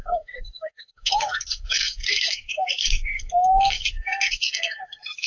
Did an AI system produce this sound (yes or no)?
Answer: yes